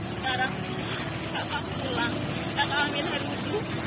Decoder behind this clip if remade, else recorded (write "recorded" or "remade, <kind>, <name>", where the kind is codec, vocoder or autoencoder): recorded